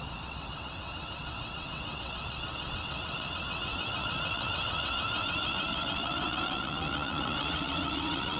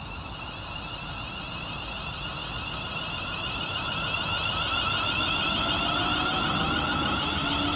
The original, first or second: second